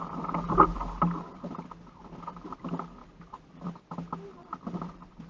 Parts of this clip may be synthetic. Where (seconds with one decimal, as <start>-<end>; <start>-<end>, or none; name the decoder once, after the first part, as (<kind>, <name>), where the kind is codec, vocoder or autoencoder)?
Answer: 3.0-3.7 (vocoder, BigVGAN v2); 4.4-5.3